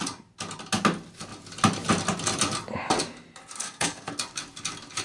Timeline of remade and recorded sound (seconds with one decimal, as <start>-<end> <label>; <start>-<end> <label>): 0.0-3.6 recorded; 3.6-4.1 remade; 4.1-5.0 recorded

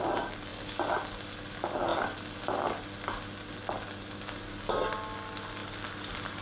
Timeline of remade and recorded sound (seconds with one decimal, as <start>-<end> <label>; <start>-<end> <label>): 0.0-6.4 recorded

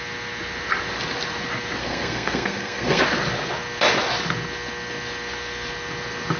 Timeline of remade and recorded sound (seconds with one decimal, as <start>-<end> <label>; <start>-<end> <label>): 0.0-1.8 recorded; 1.8-3.0 remade; 3.0-6.4 recorded

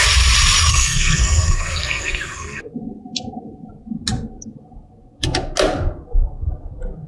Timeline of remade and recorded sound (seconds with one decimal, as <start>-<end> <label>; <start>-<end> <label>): 0.0-0.7 recorded; 0.7-2.6 remade; 2.6-7.1 recorded

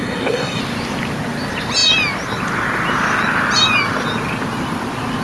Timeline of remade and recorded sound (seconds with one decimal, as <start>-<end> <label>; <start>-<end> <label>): 0.0-0.6 remade; 0.6-5.2 recorded

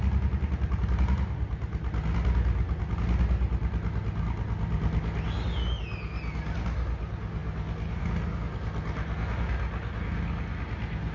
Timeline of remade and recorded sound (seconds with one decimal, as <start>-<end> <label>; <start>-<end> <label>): 0.0-11.1 recorded